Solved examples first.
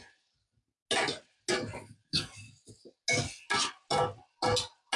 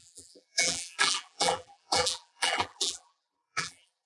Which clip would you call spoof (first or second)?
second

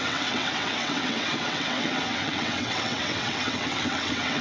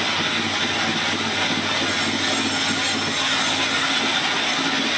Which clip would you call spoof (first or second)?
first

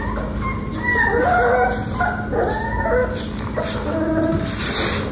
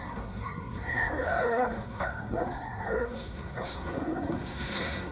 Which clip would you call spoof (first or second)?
second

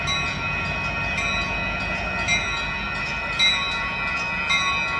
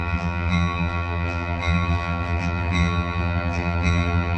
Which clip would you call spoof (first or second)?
second